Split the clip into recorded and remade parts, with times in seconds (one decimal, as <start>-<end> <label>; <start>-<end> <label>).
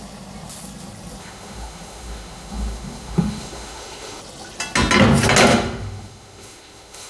0.0-1.2 recorded; 1.2-4.2 remade; 4.2-5.5 recorded; 5.5-7.1 remade